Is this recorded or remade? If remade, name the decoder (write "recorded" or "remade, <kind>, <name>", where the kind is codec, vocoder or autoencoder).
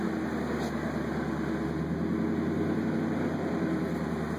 recorded